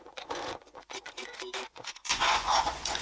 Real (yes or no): no